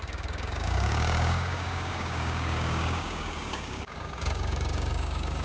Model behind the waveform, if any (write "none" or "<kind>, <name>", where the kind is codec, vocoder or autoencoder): codec, DAC